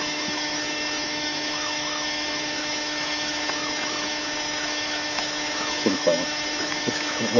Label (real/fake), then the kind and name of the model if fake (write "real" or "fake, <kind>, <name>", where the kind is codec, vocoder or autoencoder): fake, autoencoder, DAC-VAE